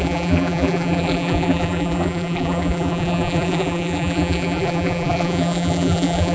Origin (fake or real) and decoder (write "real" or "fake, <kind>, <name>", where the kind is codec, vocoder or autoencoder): fake, vocoder, BigVGAN v2